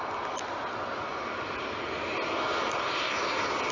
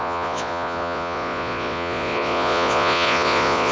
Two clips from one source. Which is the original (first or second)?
first